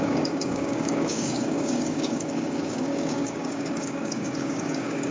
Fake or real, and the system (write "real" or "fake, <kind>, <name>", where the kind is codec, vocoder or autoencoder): fake, codec, DAC